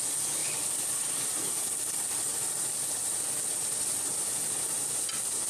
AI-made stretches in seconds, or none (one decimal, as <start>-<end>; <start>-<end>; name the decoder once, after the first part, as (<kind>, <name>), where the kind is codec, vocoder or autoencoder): none